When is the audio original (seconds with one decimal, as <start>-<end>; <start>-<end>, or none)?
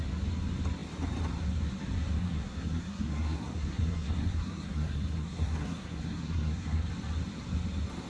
0.0-2.2; 6.9-8.1